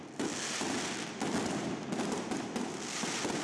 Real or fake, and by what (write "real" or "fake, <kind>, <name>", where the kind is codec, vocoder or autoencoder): real